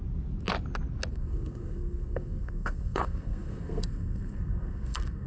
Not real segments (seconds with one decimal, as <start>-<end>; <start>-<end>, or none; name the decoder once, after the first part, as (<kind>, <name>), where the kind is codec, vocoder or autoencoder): 1.1-5.3 (codec, SNAC)

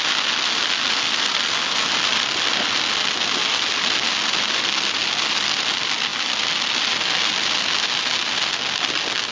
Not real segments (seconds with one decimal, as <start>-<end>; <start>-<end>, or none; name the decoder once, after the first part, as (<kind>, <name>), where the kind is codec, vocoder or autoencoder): none

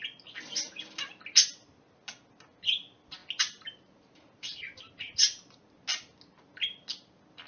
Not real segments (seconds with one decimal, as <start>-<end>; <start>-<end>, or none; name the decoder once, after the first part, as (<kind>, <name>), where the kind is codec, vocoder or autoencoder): none

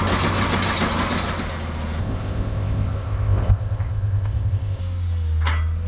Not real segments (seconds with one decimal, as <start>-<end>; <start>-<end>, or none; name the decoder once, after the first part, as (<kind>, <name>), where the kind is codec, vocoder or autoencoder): 2.0-4.8 (codec, ZipCodec)

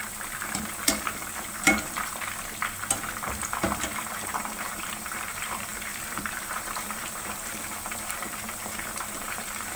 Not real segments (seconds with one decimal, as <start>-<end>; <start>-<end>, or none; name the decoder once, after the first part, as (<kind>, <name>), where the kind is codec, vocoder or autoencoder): 3.6-9.8 (vocoder, BigVGAN v2)